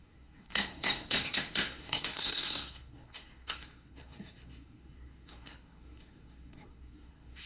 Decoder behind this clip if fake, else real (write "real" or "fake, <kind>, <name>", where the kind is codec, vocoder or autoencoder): fake, codec, SNAC